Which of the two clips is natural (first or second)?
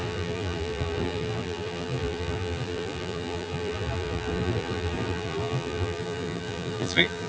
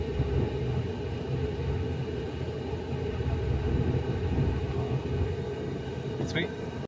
second